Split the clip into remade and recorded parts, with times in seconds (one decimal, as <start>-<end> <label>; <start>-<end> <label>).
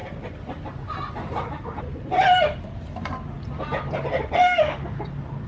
0.0-4.4 recorded; 4.4-5.0 remade; 5.0-5.5 recorded